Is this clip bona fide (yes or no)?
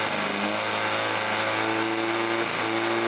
yes